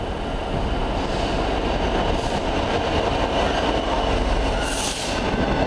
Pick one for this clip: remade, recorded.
recorded